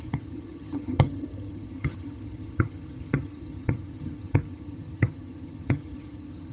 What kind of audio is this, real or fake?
fake